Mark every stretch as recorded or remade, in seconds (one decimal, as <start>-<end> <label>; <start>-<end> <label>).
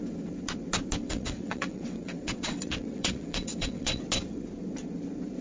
0.0-1.0 recorded; 1.0-4.0 remade; 4.0-5.4 recorded